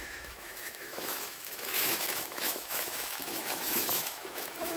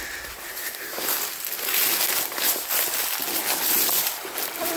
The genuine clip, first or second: second